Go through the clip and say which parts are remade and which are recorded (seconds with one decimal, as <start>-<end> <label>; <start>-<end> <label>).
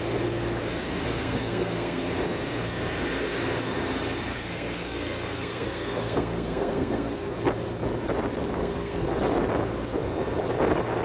0.0-1.0 recorded; 1.0-2.0 remade; 2.0-4.3 recorded; 4.3-7.1 remade; 7.1-8.6 recorded; 8.6-9.1 remade; 9.1-11.0 recorded